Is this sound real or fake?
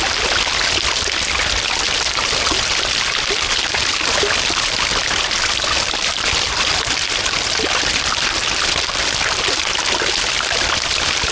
real